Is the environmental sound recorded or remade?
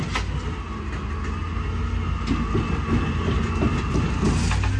recorded